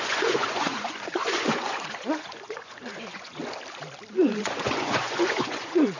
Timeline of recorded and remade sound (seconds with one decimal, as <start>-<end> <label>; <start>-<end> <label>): 0.0-3.4 remade; 3.4-4.4 recorded; 4.4-6.0 remade